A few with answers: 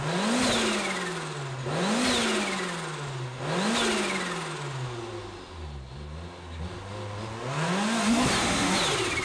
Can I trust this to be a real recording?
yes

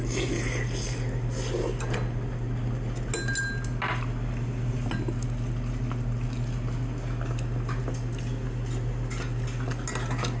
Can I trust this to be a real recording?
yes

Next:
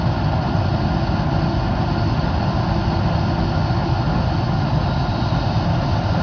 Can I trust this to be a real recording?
yes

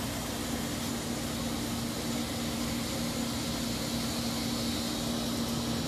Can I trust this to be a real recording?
yes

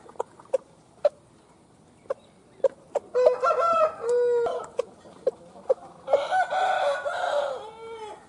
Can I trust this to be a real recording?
yes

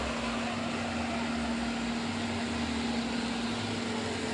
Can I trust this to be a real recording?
yes